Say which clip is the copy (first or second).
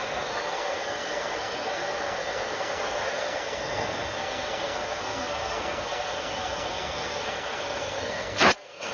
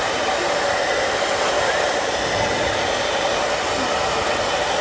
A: first